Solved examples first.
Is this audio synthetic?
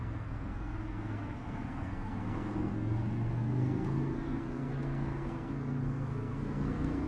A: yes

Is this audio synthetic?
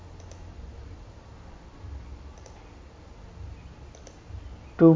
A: no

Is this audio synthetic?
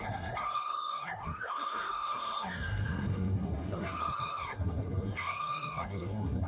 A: yes